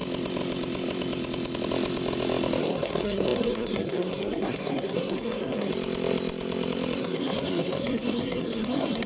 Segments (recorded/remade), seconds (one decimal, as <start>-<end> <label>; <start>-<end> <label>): 0.0-2.6 recorded; 2.6-5.7 remade; 5.7-7.0 recorded; 7.0-9.1 remade